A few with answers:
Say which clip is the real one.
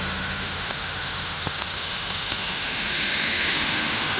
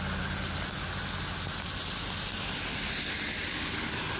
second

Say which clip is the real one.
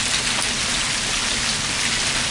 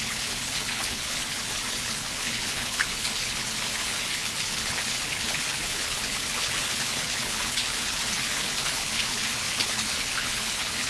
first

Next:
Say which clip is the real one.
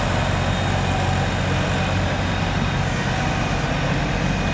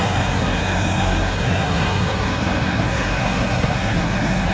first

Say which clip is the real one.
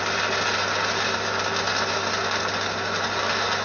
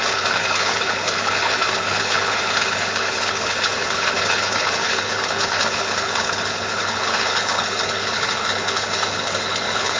first